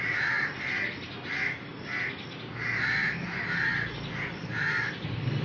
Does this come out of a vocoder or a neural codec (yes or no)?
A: no